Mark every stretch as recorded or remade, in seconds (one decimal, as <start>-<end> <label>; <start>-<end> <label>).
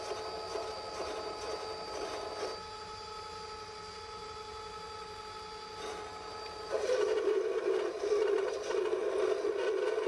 0.0-10.1 recorded